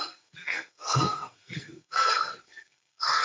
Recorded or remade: remade